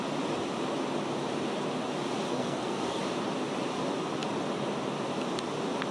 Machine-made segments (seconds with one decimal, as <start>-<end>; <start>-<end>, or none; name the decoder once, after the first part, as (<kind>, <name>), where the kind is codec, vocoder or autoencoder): 2.3-3.0 (codec, SNAC)